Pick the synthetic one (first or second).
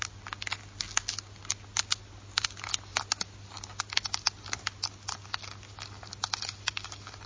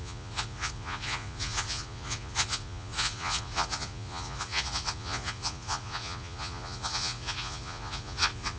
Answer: second